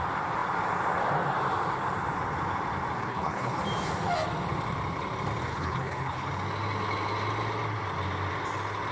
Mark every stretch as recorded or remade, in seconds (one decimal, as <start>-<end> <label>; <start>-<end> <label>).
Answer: 0.0-3.0 recorded; 3.0-3.6 remade; 3.6-5.5 recorded; 5.5-6.3 remade; 6.3-8.9 recorded